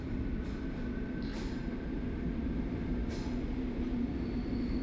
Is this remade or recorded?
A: recorded